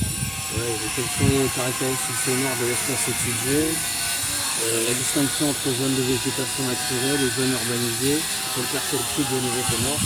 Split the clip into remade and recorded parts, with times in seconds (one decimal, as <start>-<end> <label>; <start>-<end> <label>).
0.0-4.4 recorded; 4.4-5.0 remade; 5.0-10.1 recorded